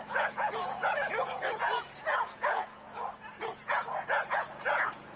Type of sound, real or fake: fake